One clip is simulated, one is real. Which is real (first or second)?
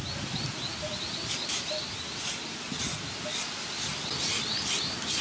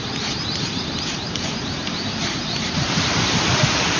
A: first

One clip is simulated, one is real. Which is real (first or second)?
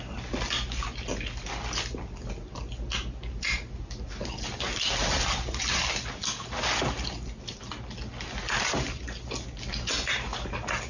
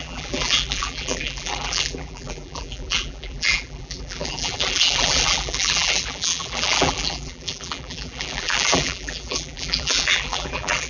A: first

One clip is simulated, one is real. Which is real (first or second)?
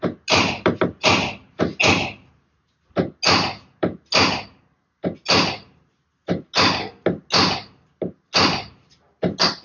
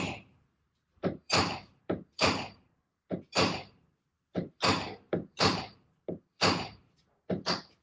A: first